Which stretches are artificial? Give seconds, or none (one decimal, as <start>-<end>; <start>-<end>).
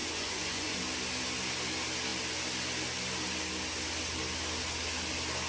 0.0-0.8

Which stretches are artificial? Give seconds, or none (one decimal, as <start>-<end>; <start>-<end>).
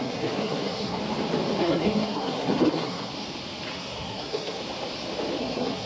0.0-1.0; 1.6-3.1; 3.7-4.6; 5.4-5.9